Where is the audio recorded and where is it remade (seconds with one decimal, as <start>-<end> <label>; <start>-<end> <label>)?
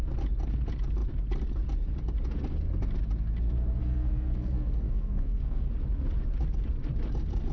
0.0-3.8 recorded; 3.8-5.7 remade; 5.7-7.5 recorded